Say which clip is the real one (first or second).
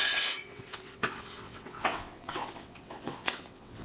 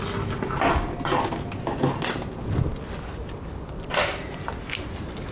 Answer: second